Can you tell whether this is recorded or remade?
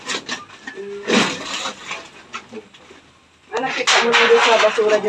recorded